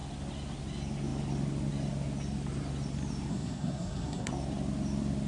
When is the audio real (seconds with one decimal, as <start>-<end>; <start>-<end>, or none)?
0.0-3.3; 4.3-5.3